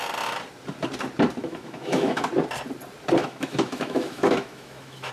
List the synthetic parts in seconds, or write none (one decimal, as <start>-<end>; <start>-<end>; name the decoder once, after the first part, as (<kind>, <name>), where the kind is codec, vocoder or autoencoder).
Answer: 1.4-2.3 (autoencoder, DAC-VAE); 3.2-5.1